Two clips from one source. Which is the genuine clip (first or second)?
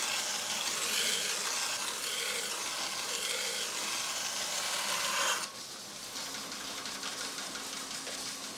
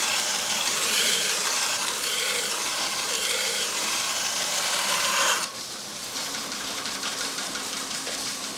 first